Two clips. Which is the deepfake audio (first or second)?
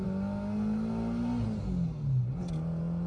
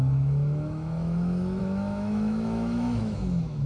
second